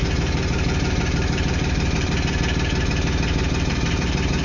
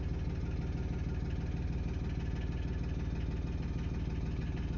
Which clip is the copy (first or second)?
first